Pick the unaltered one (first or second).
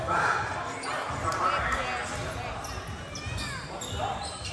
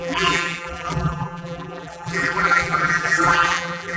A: first